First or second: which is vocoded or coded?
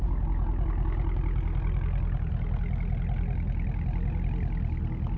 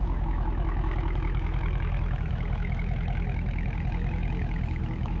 second